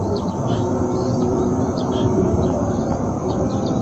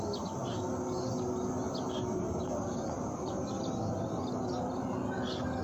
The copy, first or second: first